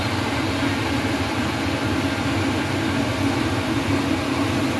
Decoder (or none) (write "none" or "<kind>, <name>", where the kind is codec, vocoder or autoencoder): none